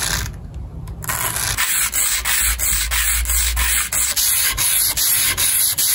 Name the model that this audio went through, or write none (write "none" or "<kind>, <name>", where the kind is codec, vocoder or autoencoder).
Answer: none